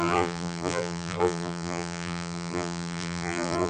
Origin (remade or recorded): remade